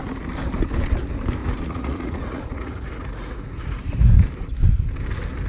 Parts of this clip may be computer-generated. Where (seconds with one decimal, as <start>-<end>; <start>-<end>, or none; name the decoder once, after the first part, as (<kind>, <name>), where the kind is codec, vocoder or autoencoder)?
1.4-3.8 (vocoder, Vocos)